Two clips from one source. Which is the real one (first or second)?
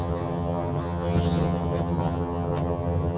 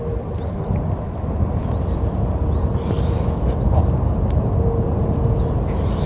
second